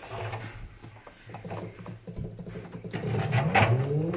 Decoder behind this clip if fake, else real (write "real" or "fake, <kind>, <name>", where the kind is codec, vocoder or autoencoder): real